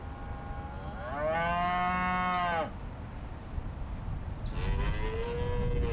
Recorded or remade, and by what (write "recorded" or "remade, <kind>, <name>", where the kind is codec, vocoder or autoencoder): recorded